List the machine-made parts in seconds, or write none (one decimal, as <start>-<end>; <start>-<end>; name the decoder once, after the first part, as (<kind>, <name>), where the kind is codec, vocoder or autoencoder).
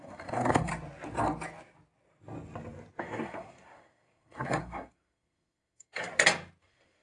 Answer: 0.0-0.7 (codec, SNAC); 3.0-6.1; 6.6-7.0